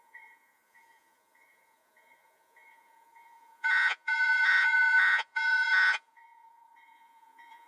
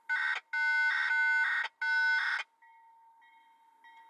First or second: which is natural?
second